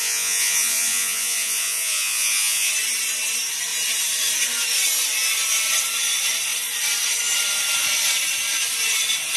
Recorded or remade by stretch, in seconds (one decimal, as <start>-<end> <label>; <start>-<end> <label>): 0.0-2.7 remade; 2.7-9.4 recorded